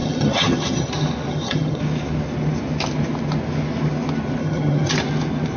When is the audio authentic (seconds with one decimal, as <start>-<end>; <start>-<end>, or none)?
0.9-1.3; 1.8-4.4; 4.9-5.6